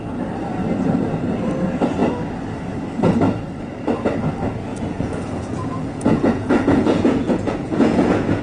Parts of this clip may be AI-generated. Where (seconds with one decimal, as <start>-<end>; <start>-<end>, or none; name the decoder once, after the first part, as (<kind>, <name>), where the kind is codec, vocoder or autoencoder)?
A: 4.7-8.4 (vocoder, Vocos)